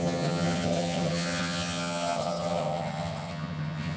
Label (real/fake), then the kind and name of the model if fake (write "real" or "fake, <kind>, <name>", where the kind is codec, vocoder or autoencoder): fake, vocoder, HiFi-GAN